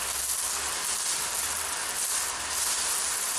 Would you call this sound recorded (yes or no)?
yes